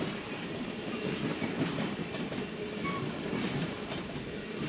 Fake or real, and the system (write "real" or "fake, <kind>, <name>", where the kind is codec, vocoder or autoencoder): fake, vocoder, BigVGAN v2